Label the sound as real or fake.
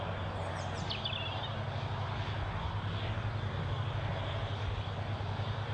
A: real